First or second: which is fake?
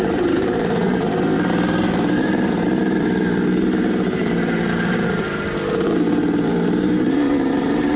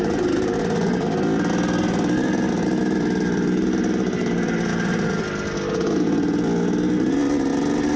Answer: first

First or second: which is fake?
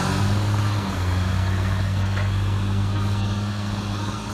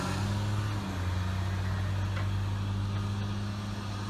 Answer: first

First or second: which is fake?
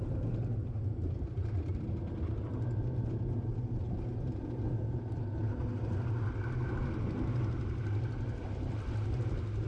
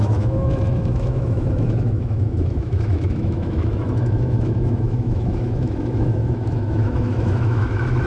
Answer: second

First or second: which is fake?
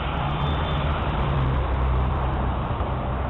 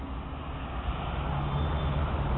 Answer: first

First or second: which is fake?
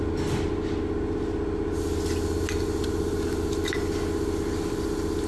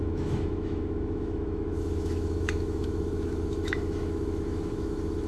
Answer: second